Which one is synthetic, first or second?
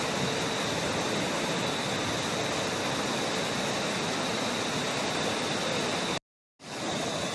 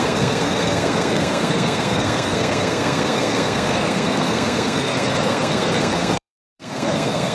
second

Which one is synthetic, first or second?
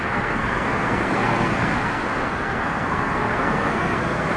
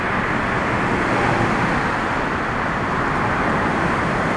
first